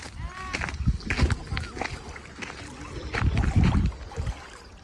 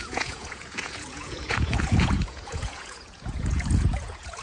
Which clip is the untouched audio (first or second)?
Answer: first